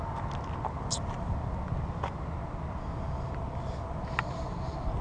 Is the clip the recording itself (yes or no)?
yes